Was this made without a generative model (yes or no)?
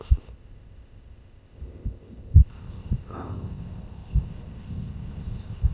no